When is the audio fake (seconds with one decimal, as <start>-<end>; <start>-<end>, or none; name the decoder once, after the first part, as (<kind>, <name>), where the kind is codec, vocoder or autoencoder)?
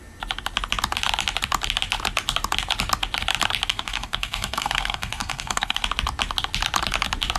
3.7-5.8 (codec, SNAC)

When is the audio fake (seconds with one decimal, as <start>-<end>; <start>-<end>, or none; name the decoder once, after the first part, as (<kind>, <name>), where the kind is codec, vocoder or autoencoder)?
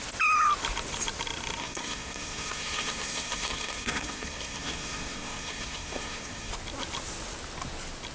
1.6-6.5 (codec, SNAC)